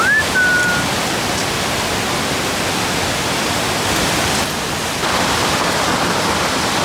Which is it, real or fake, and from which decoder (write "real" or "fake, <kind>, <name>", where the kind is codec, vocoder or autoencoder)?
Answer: real